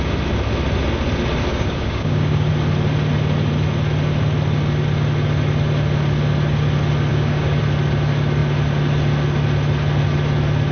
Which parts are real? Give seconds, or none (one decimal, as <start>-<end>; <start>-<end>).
0.0-1.5; 2.5-7.1; 7.6-10.7